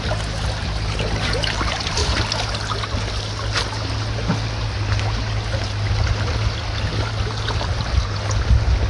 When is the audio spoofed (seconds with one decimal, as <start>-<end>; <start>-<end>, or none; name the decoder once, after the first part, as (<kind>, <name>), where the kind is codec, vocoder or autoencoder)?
none